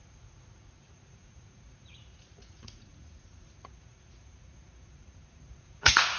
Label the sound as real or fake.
fake